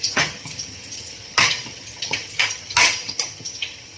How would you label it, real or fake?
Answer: fake